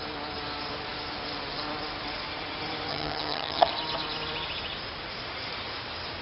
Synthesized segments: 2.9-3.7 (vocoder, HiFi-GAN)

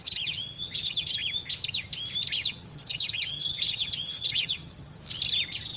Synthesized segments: 0.0-1.2 (vocoder, HiFi-GAN); 2.5-5.0

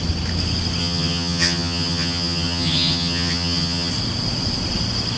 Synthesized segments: 0.8-3.9 (vocoder, HiFi-GAN)

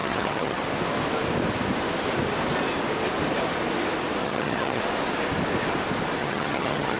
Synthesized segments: 0.0-0.6 (vocoder, HiFi-GAN); 4.2-4.8; 6.2-7.0

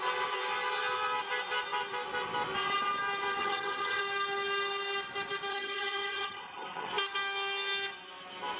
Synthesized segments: 3.4-4.0 (vocoder, HiFi-GAN); 5.5-6.9